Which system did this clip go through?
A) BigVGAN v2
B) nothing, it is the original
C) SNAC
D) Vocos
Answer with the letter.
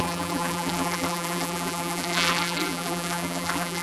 A